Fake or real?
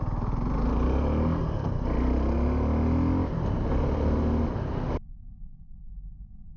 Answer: real